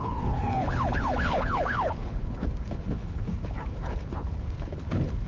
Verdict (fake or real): fake